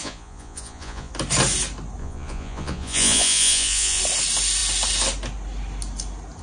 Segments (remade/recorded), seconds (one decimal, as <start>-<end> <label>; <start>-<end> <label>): 0.0-1.1 remade; 1.1-2.0 recorded; 2.0-4.0 remade; 4.0-6.4 recorded